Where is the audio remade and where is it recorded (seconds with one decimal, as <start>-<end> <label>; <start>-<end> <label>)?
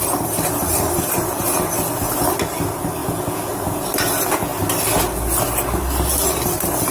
0.0-3.0 recorded; 3.0-3.5 remade; 3.5-6.9 recorded